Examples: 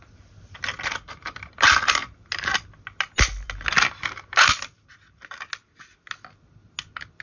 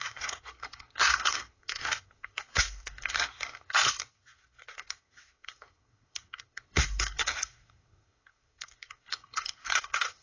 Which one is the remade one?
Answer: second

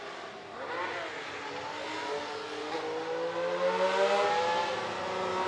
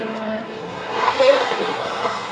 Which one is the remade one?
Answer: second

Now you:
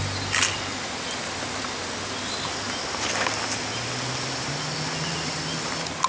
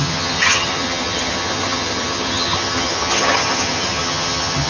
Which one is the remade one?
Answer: second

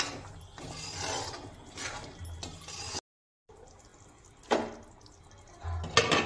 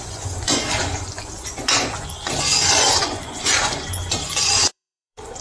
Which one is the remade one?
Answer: second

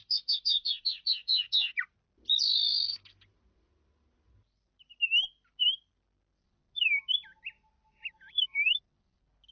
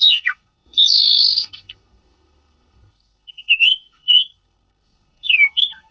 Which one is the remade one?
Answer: second